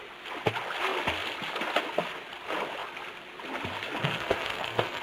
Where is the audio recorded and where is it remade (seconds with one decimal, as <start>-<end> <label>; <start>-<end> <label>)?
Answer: 0.0-4.0 recorded; 4.0-5.0 remade